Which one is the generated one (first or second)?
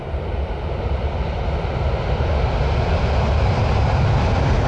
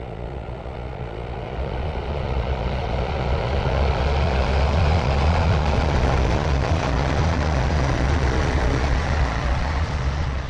second